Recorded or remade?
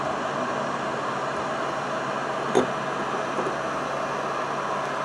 recorded